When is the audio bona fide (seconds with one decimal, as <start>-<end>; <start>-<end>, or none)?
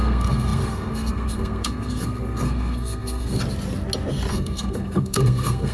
3.4-4.3